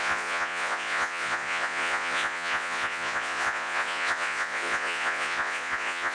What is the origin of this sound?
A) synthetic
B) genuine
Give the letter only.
A